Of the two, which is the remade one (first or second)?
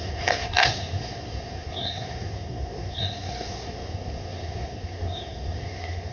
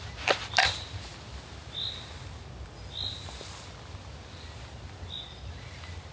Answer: first